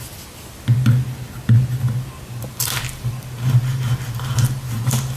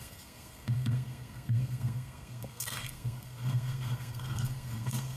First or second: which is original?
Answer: first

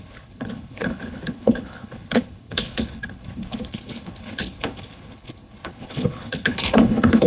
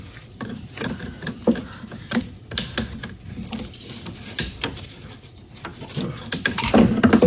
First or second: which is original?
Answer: second